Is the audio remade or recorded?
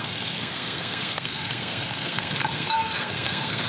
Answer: remade